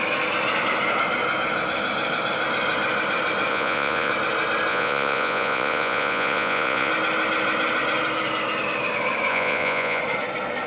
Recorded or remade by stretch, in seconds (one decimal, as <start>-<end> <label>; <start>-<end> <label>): 0.0-3.5 recorded; 3.5-4.1 remade; 4.1-4.7 recorded; 4.7-6.9 remade; 6.9-9.3 recorded; 9.3-10.0 remade; 10.0-10.7 recorded